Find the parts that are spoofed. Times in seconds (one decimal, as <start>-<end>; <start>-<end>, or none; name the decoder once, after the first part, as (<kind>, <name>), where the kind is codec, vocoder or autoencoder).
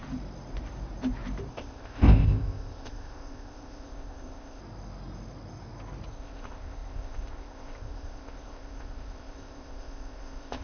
1.5-4.6 (codec, ZipCodec); 6.1-10.6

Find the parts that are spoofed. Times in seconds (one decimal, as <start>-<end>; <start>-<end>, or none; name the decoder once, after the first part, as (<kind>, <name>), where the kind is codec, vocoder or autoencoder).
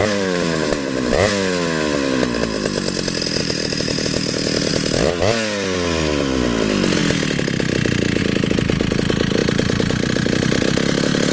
0.0-1.3 (vocoder, BigVGAN v2); 3.4-4.7; 9.4-10.6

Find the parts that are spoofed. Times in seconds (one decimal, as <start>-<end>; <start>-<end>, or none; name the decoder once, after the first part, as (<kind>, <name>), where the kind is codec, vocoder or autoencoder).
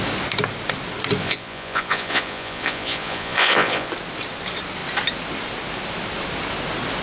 1.2-3.9 (vocoder, Vocos)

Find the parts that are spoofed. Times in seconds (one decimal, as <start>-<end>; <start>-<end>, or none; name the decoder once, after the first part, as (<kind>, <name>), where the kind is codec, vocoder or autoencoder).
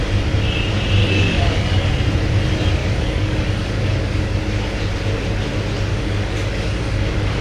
1.0-1.9 (codec, DAC); 2.8-4.4; 5.9-7.4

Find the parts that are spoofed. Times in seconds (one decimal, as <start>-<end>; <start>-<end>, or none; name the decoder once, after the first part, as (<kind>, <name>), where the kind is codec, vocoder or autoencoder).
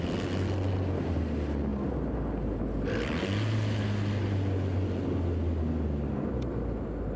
none